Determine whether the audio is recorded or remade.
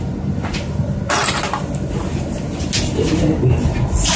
recorded